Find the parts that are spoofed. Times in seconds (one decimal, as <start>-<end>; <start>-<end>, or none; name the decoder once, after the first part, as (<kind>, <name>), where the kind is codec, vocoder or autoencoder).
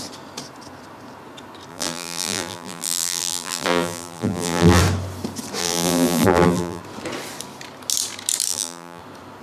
1.7-4.8 (vocoder, BigVGAN v2); 5.6-6.8; 8.5-9.0